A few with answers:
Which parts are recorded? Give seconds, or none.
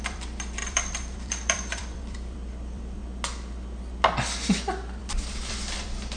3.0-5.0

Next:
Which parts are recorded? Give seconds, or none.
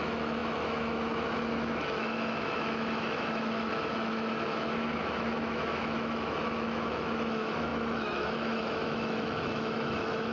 none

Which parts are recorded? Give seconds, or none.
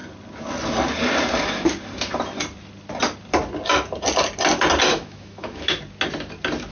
0.0-4.9; 5.8-6.7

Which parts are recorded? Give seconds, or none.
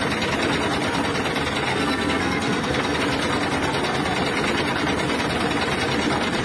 0.0-1.7; 3.0-6.4